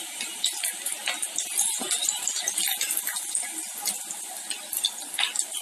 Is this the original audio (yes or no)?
yes